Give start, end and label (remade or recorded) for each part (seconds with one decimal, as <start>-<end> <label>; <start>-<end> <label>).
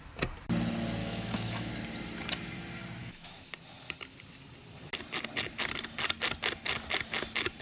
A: 0.0-1.0 recorded; 1.0-1.7 remade; 1.7-3.0 recorded; 3.0-3.5 remade; 3.5-7.6 recorded